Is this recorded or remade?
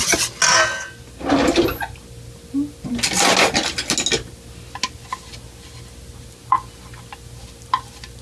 recorded